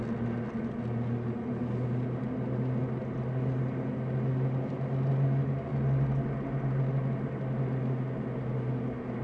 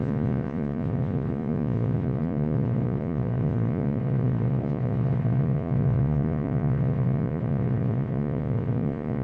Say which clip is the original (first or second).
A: first